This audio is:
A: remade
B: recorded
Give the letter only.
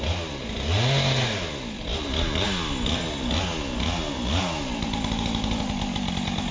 B